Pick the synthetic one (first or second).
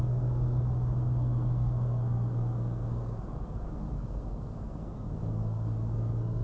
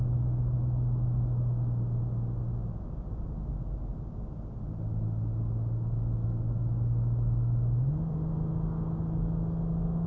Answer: first